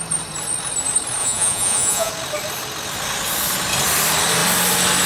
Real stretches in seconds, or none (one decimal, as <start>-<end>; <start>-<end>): 0.0-1.2; 2.1-5.1